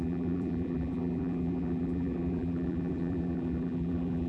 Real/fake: fake